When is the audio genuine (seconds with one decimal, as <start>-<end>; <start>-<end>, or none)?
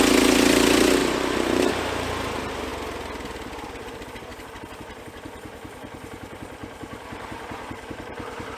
0.0-1.0; 2.1-6.6; 8.0-8.6